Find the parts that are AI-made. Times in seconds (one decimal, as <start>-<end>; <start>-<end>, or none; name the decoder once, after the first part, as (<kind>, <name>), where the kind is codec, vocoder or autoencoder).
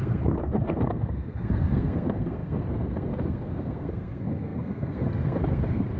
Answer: 0.0-6.0 (codec, SNAC)